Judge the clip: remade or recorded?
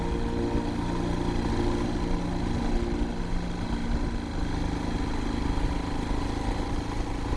recorded